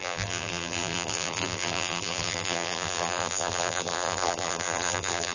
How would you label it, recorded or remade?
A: remade